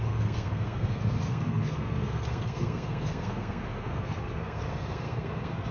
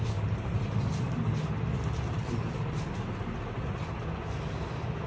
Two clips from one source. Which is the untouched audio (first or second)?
second